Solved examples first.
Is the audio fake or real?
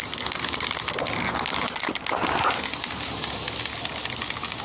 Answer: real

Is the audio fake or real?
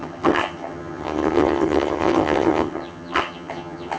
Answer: fake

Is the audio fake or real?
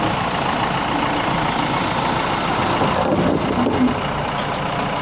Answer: real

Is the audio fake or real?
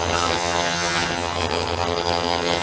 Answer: fake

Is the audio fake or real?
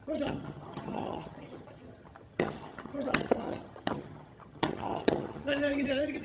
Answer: fake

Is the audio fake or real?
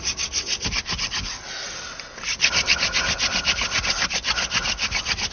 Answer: real